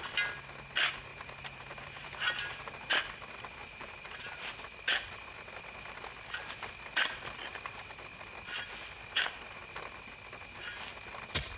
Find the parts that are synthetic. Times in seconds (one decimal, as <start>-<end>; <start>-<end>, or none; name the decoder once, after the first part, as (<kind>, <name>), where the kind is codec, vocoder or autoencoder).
1.1-3.0 (vocoder, BigVGAN v2); 3.6-4.5